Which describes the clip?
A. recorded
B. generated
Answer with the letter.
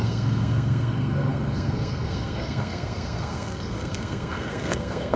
B